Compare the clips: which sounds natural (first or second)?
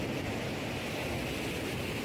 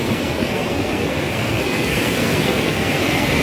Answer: first